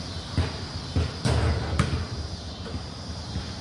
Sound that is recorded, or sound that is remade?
recorded